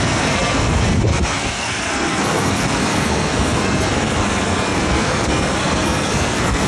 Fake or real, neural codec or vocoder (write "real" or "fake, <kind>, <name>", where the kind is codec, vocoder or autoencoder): fake, codec, SNAC